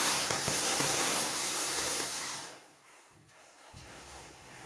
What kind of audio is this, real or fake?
fake